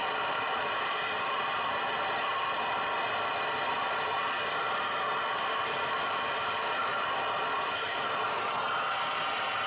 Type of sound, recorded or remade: recorded